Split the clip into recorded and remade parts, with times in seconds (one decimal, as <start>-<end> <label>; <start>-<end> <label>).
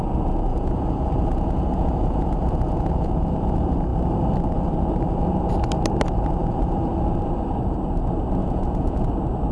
0.0-0.5 recorded; 0.5-3.1 remade; 3.1-8.4 recorded; 8.4-9.1 remade; 9.1-9.5 recorded